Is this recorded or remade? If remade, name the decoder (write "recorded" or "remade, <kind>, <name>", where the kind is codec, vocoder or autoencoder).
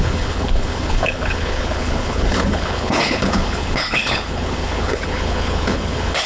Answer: remade, codec, HILCodec